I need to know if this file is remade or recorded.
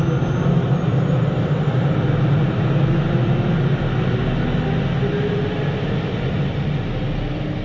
recorded